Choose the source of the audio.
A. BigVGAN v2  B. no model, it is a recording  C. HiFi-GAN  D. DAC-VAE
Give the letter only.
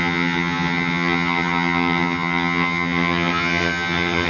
C